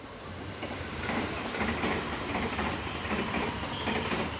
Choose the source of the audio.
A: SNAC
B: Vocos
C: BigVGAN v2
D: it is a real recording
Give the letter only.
C